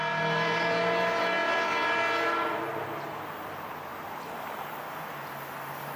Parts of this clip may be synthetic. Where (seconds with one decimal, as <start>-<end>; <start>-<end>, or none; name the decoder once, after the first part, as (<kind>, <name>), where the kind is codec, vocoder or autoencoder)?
3.9-4.8 (vocoder, BigVGAN v2)